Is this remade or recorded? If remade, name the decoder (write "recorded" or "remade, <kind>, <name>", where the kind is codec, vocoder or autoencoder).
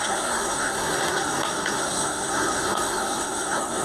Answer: remade, codec, SNAC